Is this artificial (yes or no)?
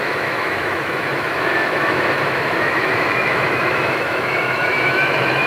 yes